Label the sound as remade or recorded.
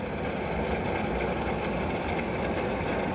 recorded